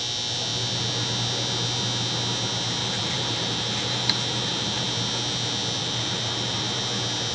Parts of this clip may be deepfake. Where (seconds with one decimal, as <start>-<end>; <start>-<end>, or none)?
2.8-4.9; 5.8-6.8